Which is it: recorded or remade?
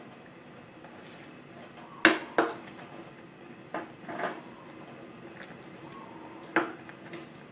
recorded